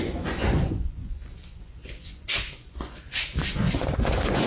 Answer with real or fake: fake